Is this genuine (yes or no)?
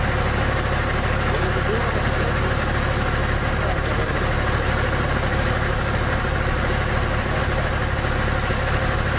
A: yes